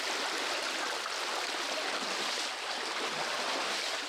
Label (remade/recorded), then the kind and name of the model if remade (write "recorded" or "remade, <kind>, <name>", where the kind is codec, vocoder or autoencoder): recorded